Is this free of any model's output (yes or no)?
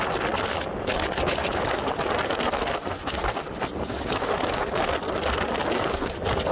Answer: yes